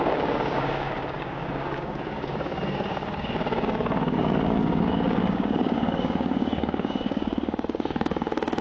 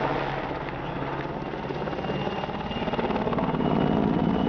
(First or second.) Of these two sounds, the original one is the second